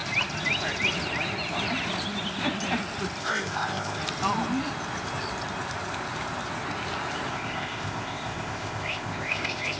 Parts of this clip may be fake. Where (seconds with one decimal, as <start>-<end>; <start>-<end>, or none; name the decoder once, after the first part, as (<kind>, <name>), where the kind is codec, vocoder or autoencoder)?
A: 3.2-4.0 (codec, ZipCodec); 7.3-9.8